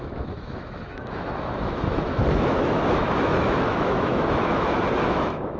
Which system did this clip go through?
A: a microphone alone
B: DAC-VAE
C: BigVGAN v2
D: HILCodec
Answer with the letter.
B